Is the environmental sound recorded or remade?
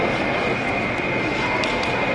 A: recorded